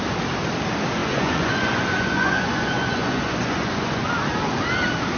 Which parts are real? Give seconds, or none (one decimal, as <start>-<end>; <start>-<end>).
0.0-1.0; 4.1-5.2